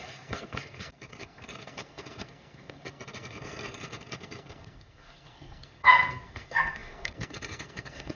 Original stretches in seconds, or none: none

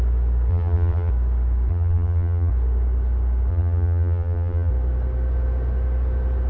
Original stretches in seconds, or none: 0.0-0.5; 1.1-1.7; 2.5-3.5; 4.7-6.5